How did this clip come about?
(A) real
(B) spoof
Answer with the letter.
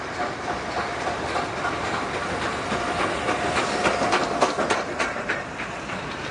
A